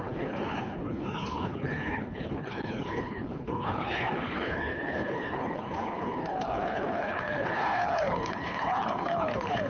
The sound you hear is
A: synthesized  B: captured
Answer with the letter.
A